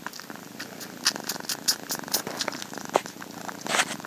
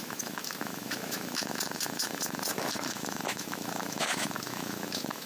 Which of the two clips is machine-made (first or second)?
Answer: second